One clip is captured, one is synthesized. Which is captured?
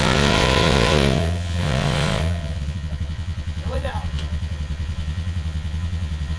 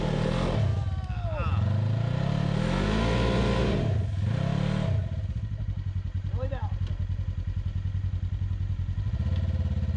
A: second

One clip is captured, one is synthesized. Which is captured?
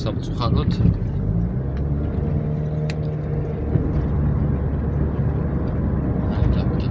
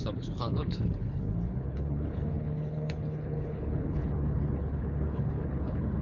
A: first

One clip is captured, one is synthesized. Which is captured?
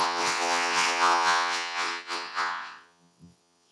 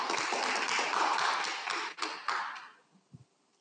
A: second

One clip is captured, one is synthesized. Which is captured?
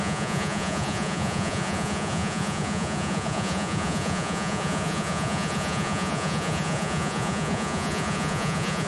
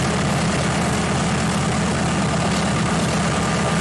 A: second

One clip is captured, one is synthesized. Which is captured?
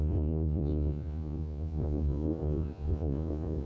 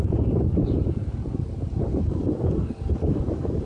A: second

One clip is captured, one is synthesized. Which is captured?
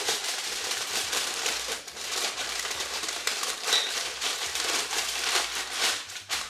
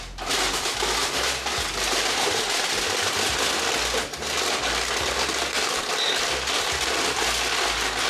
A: second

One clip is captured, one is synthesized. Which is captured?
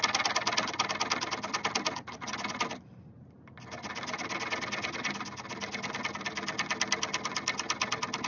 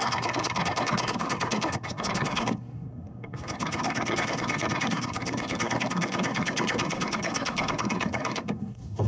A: first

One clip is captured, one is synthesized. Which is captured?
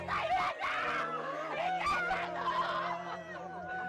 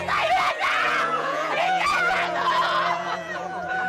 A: first